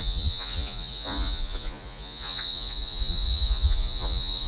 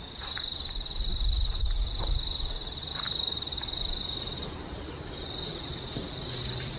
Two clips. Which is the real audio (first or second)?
second